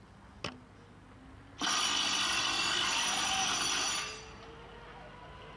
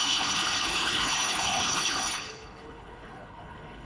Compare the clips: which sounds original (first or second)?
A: first